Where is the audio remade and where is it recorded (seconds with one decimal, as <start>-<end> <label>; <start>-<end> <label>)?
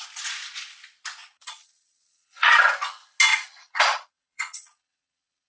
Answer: 0.0-1.2 recorded; 1.2-2.7 remade; 2.7-3.3 recorded; 3.3-5.5 remade